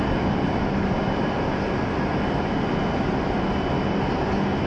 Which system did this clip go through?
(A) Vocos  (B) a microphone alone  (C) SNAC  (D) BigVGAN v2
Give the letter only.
B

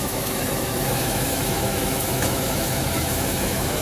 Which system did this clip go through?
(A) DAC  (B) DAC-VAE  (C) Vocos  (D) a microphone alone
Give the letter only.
B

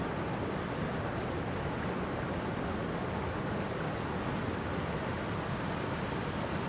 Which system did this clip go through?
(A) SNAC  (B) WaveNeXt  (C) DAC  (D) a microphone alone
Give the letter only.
D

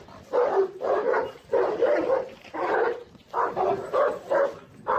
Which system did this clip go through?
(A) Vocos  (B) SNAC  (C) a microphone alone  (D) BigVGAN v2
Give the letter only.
C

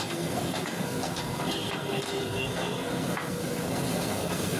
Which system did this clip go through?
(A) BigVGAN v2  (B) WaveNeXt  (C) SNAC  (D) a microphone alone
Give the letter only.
C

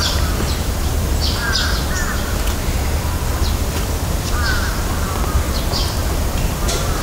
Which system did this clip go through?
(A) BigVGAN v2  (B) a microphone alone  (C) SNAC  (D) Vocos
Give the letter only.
A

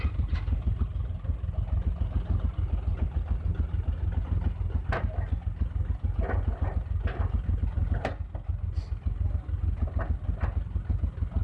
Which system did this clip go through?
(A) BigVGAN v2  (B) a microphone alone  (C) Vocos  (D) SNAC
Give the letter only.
B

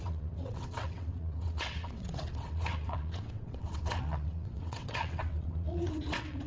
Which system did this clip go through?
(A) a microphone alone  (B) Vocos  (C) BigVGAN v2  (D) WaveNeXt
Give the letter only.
D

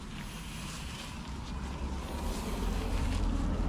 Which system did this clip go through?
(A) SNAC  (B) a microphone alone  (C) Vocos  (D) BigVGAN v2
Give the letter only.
B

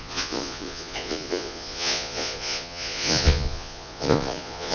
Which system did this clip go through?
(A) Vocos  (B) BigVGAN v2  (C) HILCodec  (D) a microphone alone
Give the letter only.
A